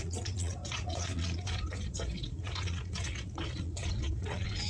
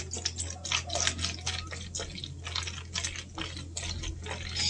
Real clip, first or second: second